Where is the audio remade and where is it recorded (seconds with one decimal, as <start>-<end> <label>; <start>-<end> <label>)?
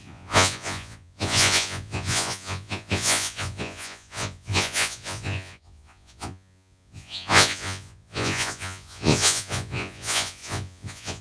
0.0-11.2 remade